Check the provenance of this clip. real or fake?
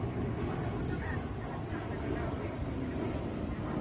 real